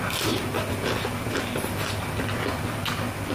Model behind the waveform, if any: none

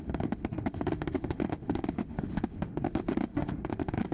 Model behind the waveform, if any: autoencoder, DAC-VAE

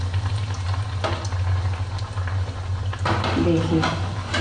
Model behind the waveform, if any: none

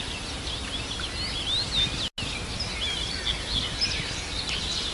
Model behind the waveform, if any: none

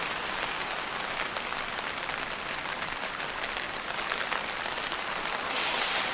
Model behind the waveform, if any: none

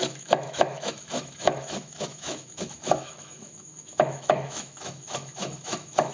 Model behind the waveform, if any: autoencoder, DAC-VAE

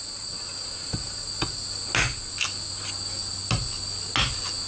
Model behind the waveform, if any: none